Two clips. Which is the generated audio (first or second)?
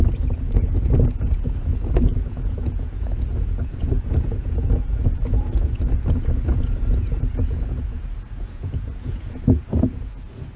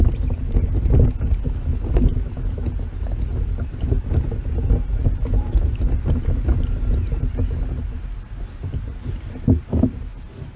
first